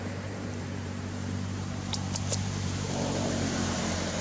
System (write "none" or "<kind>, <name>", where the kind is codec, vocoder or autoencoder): vocoder, BigVGAN v2